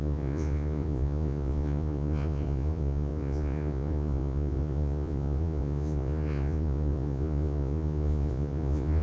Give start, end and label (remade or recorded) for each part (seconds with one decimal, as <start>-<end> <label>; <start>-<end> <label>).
0.0-9.0 remade